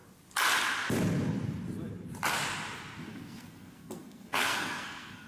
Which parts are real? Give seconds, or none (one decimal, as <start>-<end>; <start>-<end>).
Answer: 0.0-3.1